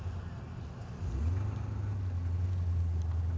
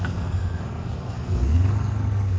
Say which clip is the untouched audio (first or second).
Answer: first